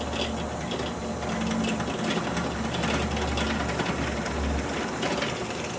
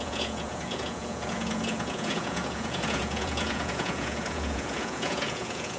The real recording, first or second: first